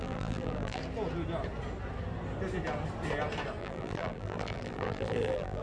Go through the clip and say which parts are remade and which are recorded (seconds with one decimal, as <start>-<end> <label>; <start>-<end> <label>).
0.0-0.8 remade; 0.8-3.6 recorded; 3.6-5.6 remade